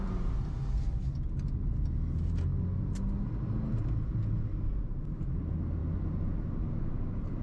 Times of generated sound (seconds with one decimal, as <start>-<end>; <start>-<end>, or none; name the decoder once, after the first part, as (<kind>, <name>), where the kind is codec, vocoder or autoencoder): none